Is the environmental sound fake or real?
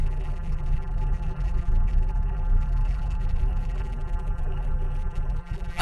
fake